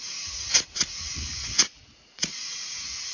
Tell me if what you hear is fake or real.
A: fake